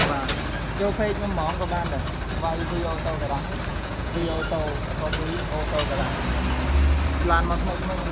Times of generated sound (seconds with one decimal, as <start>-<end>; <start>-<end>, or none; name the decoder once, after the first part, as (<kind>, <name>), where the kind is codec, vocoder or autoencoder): 3.7-4.4 (vocoder, Vocos)